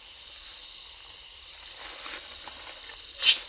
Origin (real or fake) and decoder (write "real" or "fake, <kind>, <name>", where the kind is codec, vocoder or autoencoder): real